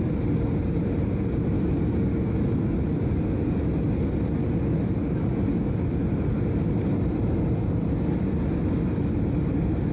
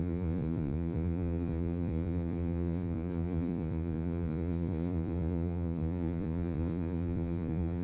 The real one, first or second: first